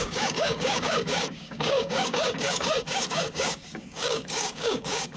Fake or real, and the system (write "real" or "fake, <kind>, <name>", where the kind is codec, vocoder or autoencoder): fake, codec, DAC